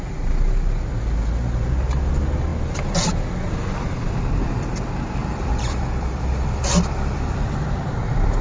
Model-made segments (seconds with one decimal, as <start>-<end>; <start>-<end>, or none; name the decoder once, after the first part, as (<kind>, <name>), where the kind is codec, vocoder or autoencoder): 5.2-8.4 (vocoder, BigVGAN v2)